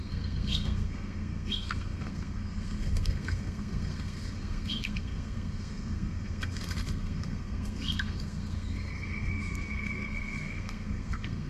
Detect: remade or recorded remade